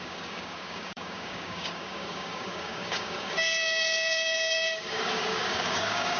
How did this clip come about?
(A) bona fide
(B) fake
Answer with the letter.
B